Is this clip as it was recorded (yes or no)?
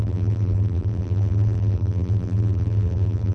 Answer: no